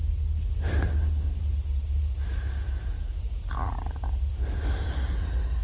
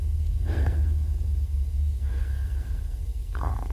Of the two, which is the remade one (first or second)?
second